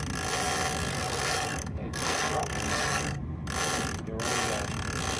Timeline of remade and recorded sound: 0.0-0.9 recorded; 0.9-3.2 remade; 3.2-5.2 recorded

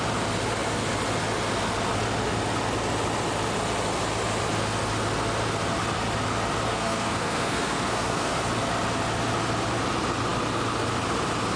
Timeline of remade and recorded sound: 0.0-6.7 recorded; 6.7-8.4 remade; 8.4-11.6 recorded